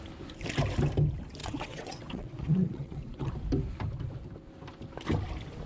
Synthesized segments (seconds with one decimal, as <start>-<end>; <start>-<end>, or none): 1.4-3.3

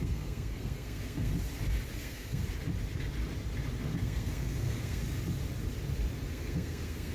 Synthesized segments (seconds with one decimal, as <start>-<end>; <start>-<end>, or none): 0.0-1.3; 1.9-2.4; 3.8-5.0; 6.3-7.1

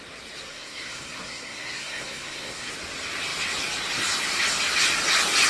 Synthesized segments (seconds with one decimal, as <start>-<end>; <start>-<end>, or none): 0.5-2.7

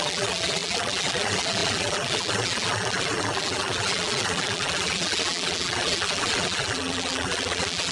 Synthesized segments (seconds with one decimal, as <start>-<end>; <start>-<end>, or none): 0.0-7.9

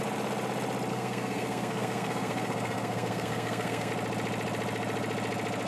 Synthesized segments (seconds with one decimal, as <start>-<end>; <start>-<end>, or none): 0.9-3.9

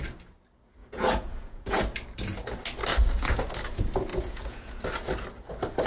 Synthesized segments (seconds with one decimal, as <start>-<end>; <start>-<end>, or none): 0.8-1.8; 2.9-3.5; 4.1-4.8

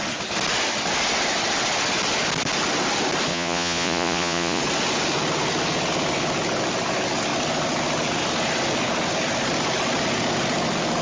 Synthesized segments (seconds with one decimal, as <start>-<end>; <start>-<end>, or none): 3.3-4.6